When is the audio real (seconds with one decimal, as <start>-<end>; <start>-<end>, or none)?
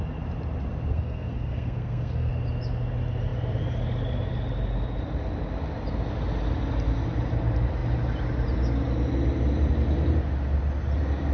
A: 0.0-0.9; 2.3-11.3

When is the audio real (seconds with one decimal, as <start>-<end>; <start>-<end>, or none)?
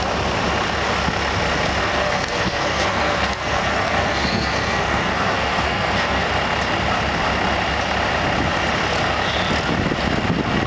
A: 0.0-1.8; 6.3-10.7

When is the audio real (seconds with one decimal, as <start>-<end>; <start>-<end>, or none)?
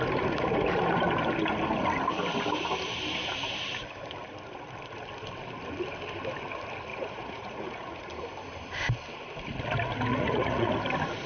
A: 0.0-6.9; 8.1-10.1; 10.7-11.3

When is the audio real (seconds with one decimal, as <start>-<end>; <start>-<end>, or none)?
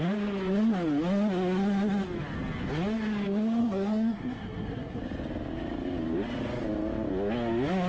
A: 0.0-3.6; 5.0-7.9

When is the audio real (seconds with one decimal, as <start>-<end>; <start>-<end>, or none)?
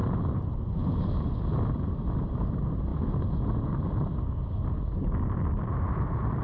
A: 0.0-6.4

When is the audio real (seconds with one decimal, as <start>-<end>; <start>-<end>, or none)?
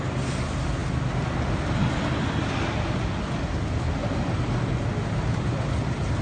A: 0.0-6.2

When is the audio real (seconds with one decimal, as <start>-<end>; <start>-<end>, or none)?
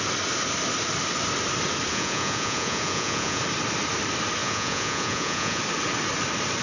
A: 0.0-1.9; 3.4-4.4; 5.6-6.6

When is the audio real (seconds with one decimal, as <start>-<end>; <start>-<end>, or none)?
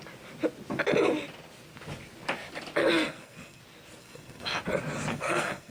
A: 0.0-2.8; 3.6-4.0; 4.6-5.1